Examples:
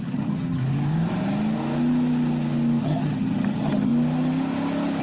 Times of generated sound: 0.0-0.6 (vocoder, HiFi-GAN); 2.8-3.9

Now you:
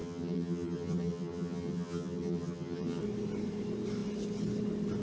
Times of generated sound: 0.0-3.0 (vocoder, HiFi-GAN)

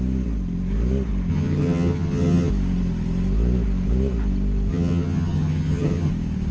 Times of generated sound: 1.3-2.5 (vocoder, HiFi-GAN); 4.7-6.1

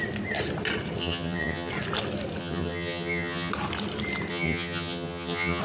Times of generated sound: 1.0-1.7 (vocoder, HiFi-GAN); 2.4-3.5; 4.3-5.6